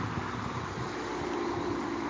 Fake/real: real